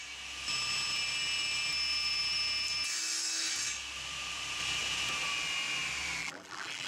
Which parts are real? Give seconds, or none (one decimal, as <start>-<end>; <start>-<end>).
0.0-6.2